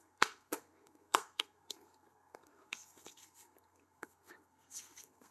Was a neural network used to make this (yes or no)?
yes